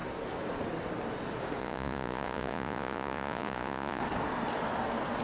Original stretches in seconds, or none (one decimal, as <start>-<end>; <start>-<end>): 0.0-1.6; 4.0-5.2